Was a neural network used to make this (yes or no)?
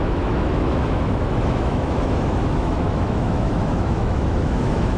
yes